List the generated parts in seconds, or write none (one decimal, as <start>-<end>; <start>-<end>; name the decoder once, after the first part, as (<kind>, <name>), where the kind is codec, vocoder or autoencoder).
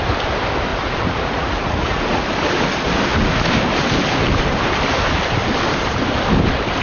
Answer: 0.7-2.2 (vocoder, Vocos)